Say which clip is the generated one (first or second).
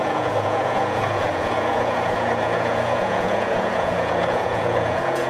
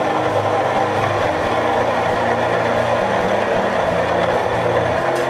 first